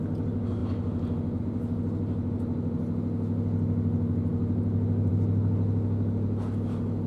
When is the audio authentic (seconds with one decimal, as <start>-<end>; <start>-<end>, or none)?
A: 0.0-7.1